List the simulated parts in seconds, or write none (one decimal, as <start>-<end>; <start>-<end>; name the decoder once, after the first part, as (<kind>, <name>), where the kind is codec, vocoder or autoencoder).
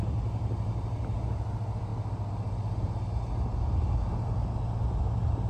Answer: none